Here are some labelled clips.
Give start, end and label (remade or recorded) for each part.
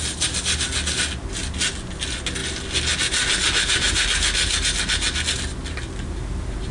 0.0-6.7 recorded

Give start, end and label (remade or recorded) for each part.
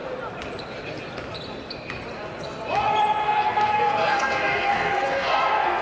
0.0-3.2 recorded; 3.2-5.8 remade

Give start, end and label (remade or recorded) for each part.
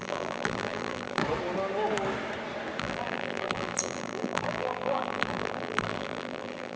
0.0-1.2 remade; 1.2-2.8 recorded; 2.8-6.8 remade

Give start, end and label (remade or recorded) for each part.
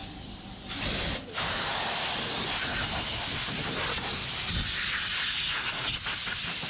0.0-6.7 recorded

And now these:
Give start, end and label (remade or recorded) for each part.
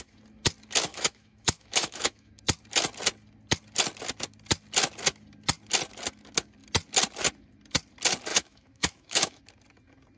0.0-0.9 recorded; 0.9-2.3 remade; 2.3-8.3 recorded; 8.3-9.4 remade; 9.4-10.2 recorded